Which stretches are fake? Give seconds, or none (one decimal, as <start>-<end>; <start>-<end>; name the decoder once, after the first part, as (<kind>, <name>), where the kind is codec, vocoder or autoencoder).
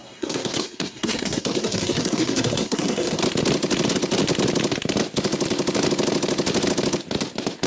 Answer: 0.0-3.2 (codec, SNAC)